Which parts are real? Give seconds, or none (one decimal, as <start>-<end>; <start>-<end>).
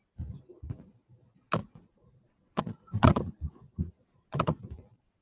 0.0-1.6; 4.7-5.2